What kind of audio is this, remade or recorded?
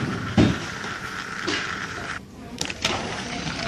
remade